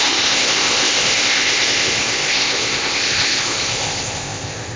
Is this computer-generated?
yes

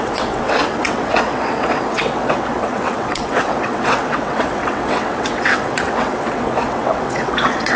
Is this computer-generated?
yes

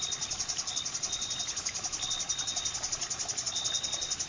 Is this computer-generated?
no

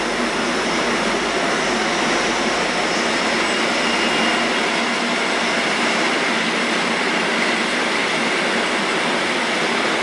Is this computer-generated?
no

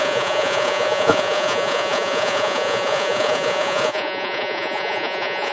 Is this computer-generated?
yes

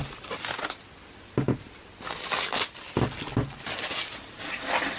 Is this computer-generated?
no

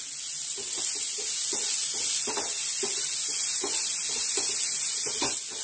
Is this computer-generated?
no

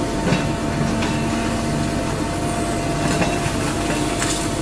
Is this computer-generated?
no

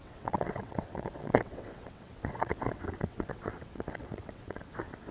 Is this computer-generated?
yes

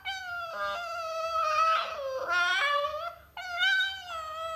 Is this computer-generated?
no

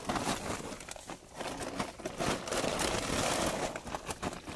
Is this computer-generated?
no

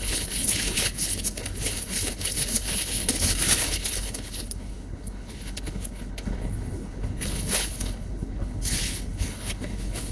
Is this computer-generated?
yes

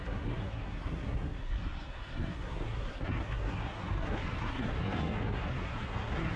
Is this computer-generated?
yes